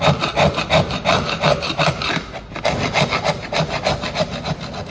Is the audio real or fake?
real